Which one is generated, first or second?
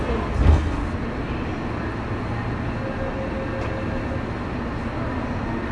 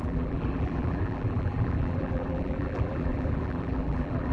second